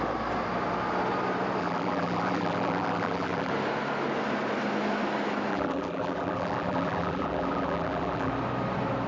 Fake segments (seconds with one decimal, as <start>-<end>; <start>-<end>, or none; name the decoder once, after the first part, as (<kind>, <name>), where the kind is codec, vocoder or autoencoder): 1.6-3.5 (vocoder, BigVGAN v2); 5.5-8.3